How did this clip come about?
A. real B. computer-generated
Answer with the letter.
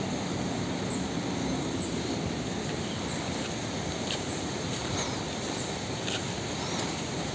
A